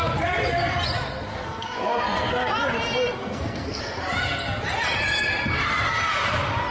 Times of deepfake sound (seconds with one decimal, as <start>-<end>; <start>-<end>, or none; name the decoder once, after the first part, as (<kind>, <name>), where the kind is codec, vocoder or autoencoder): 1.3-2.5 (codec, SNAC); 3.2-3.8